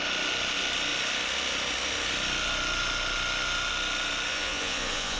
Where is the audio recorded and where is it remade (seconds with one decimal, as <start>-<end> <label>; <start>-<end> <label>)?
0.0-4.3 recorded; 4.3-5.2 remade